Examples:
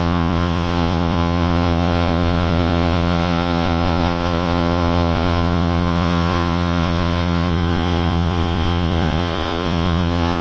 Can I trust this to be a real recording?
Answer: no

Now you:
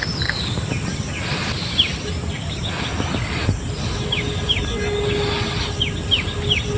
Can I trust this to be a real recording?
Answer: yes